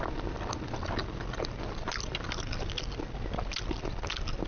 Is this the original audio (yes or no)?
yes